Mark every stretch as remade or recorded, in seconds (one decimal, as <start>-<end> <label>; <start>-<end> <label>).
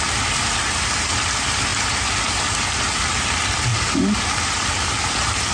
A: 0.0-5.5 recorded